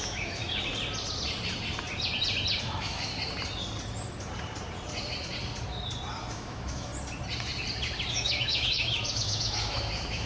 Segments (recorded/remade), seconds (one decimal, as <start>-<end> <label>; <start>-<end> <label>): 0.0-0.7 remade; 0.7-2.6 recorded; 2.6-3.1 remade; 3.1-6.3 recorded; 6.3-6.9 remade; 6.9-8.1 recorded; 8.1-10.3 remade